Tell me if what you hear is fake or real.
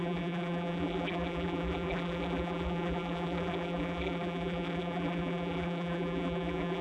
fake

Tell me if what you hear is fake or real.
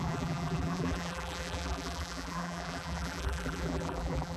fake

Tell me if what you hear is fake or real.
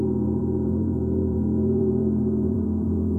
fake